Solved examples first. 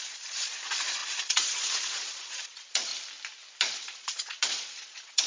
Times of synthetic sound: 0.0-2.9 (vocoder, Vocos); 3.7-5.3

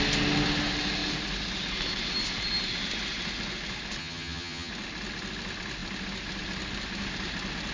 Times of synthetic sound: 4.0-4.7 (vocoder, HiFi-GAN)

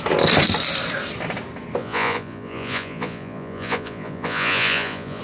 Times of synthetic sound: 1.8-5.2 (vocoder, Vocos)

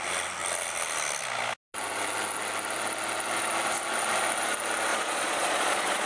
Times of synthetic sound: 4.9-6.1 (vocoder, Vocos)

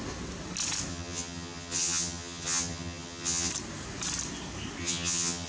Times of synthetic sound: 0.9-3.5 (vocoder, HiFi-GAN); 4.8-5.5

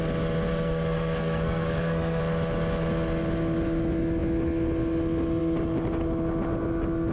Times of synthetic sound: 0.5-2.2 (codec, SNAC)